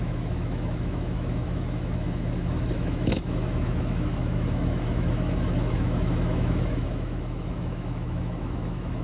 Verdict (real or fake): fake